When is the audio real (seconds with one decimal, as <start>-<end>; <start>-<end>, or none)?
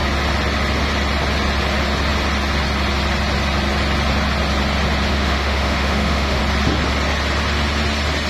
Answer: 0.0-5.1; 6.4-8.3